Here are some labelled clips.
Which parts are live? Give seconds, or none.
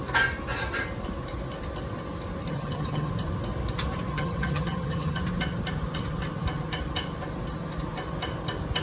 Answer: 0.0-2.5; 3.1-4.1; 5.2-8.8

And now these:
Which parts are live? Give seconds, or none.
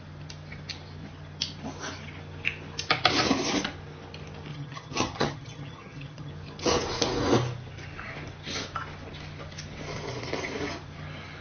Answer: 0.0-4.5; 6.3-11.4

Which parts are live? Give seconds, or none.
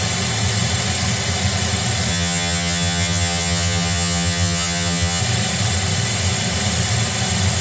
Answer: 0.0-2.1; 5.2-7.6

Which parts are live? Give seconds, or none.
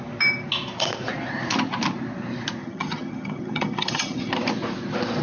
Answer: 0.0-2.6; 4.3-5.2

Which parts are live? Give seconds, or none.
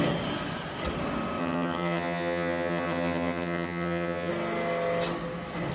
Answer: 0.0-1.4; 4.3-5.7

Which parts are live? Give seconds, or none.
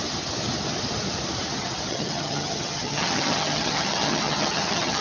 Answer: 0.0-1.9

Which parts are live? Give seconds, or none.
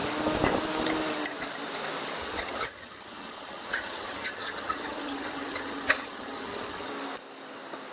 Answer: 0.0-2.2; 6.9-7.9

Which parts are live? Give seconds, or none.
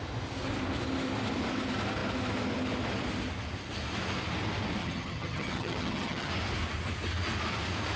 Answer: 0.0-4.8; 6.3-8.0